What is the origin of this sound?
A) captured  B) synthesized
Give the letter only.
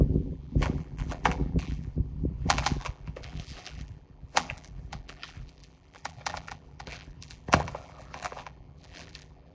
B